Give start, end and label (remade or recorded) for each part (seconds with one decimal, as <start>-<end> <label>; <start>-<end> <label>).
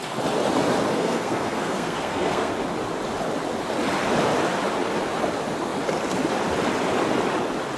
0.0-0.9 recorded; 0.9-2.5 remade; 2.5-7.8 recorded